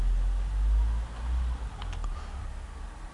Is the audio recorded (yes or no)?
yes